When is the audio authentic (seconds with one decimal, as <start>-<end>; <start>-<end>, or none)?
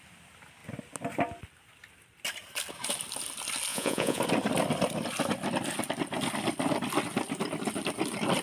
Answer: 0.0-3.7; 4.2-8.4